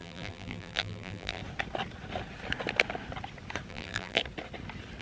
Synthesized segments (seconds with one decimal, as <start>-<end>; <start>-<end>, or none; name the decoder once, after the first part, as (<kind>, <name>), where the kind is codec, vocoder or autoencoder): 0.0-1.4 (vocoder, BigVGAN v2); 3.7-4.2